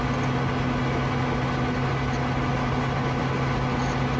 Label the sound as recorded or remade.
recorded